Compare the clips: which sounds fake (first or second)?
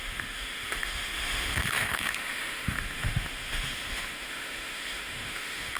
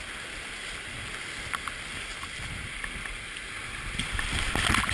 first